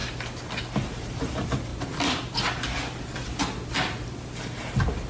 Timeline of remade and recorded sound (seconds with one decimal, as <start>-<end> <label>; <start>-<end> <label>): 0.0-0.9 recorded; 0.9-1.7 remade; 1.7-5.1 recorded